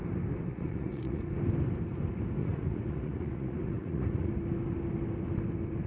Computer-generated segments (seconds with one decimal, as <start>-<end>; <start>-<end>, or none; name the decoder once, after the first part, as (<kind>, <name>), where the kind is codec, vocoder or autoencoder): 0.5-1.2 (vocoder, Vocos); 2.4-4.3